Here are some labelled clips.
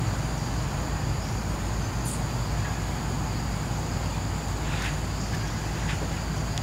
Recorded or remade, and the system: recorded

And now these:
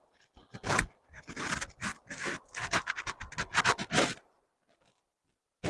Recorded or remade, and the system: recorded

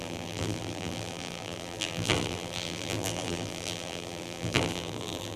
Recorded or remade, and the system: remade, vocoder, BigVGAN v2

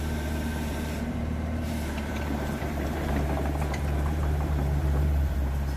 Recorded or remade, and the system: remade, vocoder, BigVGAN v2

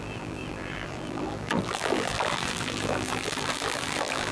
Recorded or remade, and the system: remade, vocoder, BigVGAN v2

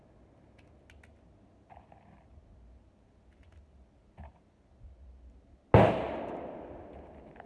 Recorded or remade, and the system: recorded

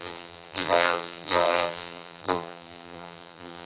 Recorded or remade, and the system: remade, vocoder, BigVGAN v2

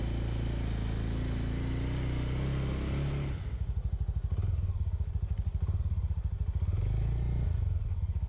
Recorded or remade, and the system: recorded